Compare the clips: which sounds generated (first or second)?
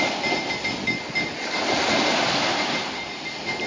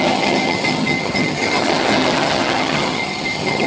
second